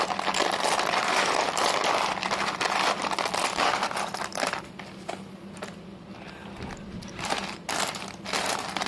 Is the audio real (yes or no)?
yes